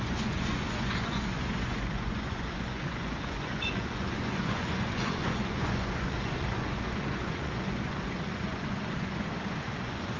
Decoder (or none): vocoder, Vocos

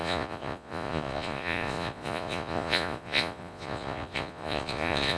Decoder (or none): vocoder, Vocos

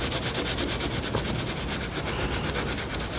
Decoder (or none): none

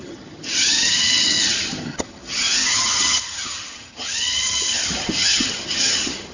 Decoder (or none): vocoder, HiFi-GAN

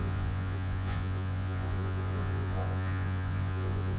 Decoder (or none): vocoder, Vocos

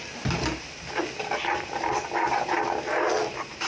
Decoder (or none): none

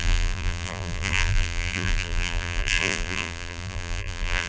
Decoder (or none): vocoder, BigVGAN v2